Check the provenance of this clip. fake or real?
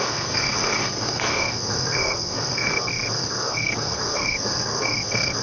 fake